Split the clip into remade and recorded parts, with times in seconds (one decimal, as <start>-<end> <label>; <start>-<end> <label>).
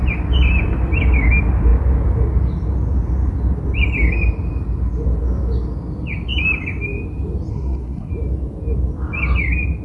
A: 0.0-7.5 recorded; 7.5-8.1 remade; 8.1-9.8 recorded